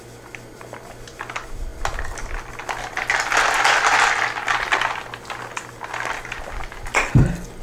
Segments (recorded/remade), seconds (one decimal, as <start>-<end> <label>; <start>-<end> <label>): 0.0-7.6 recorded

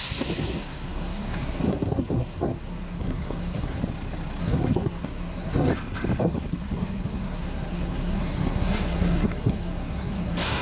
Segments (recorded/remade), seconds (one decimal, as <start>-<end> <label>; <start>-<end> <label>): 0.0-3.8 remade; 3.8-4.4 recorded; 4.4-5.7 remade; 5.7-6.2 recorded; 6.2-10.6 remade

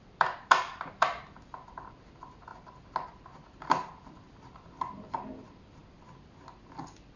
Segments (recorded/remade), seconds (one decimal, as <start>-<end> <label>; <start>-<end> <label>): 0.0-2.5 remade; 2.5-3.6 recorded; 3.6-5.8 remade; 5.8-6.8 recorded; 6.8-7.2 remade

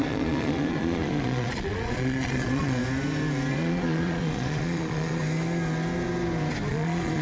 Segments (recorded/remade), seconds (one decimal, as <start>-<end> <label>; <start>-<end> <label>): 0.0-2.8 remade; 2.8-3.5 recorded; 3.5-5.2 remade; 5.2-6.7 recorded; 6.7-7.2 remade

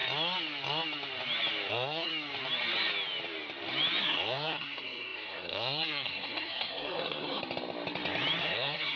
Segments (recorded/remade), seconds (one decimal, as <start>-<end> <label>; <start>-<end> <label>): 0.0-1.7 recorded; 1.7-2.1 remade; 2.1-4.0 recorded; 4.0-7.4 remade; 7.4-8.4 recorded; 8.4-9.0 remade

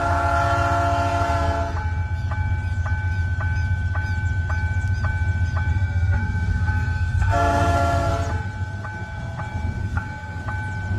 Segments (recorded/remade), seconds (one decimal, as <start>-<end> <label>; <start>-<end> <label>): 0.0-5.7 recorded; 5.7-8.1 remade; 8.1-9.8 recorded; 9.8-10.4 remade; 10.4-11.0 recorded